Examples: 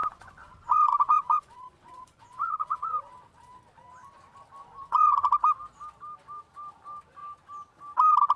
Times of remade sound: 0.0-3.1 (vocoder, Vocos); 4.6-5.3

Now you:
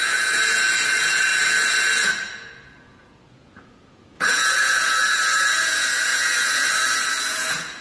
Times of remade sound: 0.0-7.8 (vocoder, Vocos)